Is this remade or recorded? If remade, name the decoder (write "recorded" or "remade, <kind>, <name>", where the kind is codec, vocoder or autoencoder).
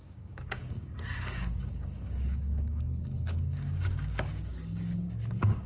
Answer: remade, codec, DAC